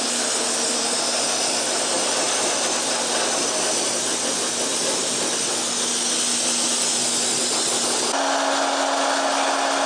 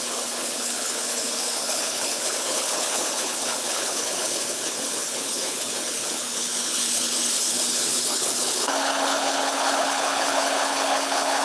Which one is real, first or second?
first